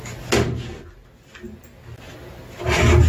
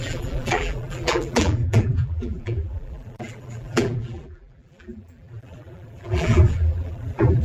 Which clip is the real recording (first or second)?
first